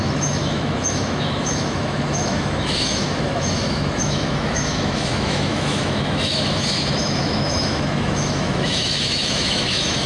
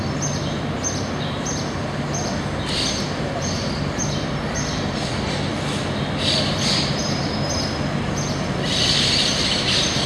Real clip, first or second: second